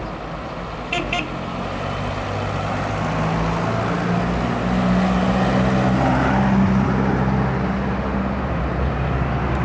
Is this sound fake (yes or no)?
no